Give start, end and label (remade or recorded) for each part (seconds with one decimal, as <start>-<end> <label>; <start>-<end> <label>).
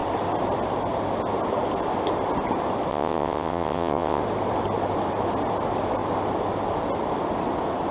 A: 0.0-2.9 recorded; 2.9-4.2 remade; 4.2-7.9 recorded